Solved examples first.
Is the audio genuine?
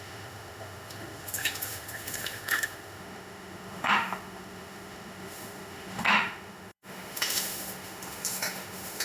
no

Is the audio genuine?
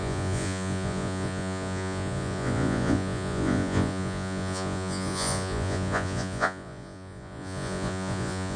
no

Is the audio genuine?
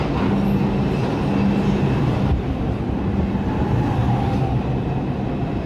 yes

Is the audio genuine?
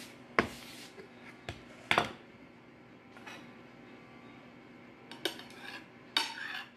yes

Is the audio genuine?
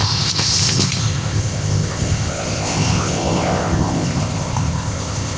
no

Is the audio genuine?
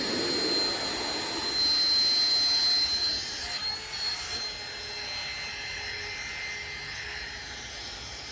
yes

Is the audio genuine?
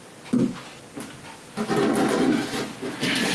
yes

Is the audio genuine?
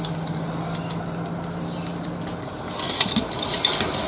yes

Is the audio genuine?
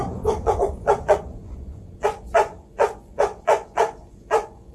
no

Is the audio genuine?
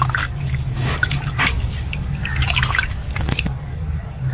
no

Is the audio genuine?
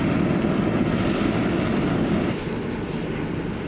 yes